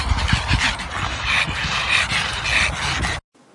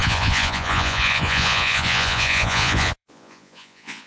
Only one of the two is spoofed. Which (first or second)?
second